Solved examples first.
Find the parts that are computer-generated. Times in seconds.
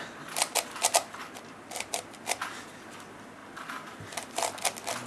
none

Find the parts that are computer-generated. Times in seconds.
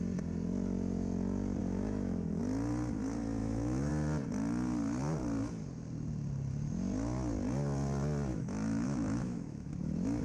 1.6-2.4 (autoencoder, DAC-VAE); 3.4-3.9; 8.3-9.7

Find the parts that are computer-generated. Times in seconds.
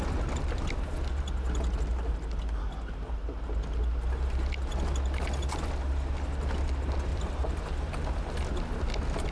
7.1-7.9 (vocoder, BigVGAN v2)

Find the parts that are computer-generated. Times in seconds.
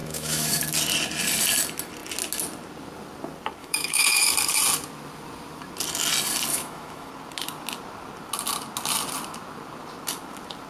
0.0-0.6 (autoencoder, DAC-VAE); 3.6-4.3; 6.5-7.1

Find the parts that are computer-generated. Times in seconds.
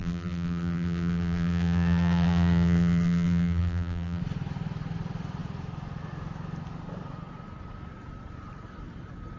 0.0-4.2 (vocoder, BigVGAN v2)